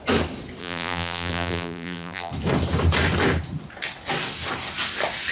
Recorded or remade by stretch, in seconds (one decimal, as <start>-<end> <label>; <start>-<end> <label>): 0.0-0.6 recorded; 0.6-2.3 remade; 2.3-5.3 recorded